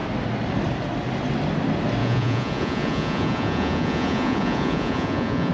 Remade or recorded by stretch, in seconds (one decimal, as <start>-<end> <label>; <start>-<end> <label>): 0.0-2.0 recorded; 2.0-5.5 remade